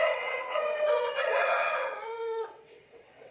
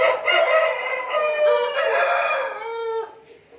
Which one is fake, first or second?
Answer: first